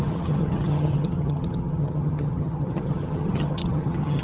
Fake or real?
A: fake